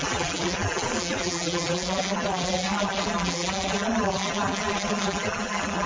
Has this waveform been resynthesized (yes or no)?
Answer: yes